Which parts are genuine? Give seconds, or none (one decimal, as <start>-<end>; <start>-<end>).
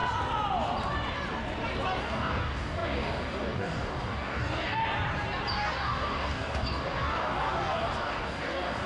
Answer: 0.0-2.0; 4.8-5.5